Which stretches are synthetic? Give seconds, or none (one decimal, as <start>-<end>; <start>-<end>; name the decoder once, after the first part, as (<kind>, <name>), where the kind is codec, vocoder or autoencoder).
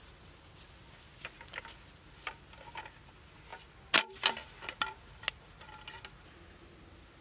none